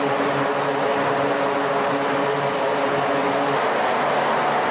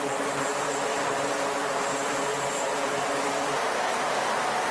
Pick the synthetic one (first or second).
second